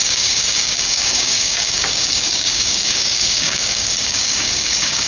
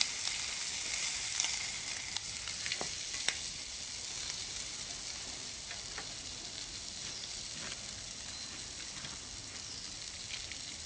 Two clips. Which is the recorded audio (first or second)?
second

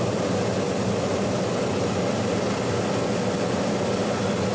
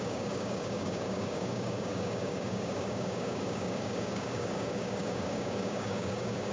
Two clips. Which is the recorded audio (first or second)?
first